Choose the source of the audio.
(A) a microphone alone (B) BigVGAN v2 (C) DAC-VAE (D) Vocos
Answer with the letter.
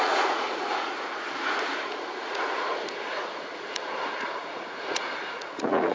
D